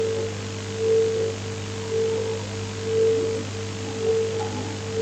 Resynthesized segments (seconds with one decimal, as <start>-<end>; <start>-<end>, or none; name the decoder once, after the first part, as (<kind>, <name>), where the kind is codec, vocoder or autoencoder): none